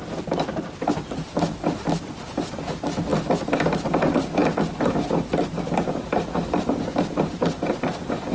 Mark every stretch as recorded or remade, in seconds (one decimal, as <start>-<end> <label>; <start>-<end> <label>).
0.0-8.3 recorded